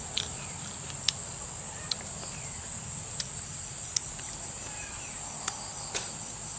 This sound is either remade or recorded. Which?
recorded